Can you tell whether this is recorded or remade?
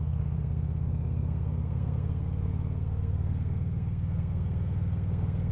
remade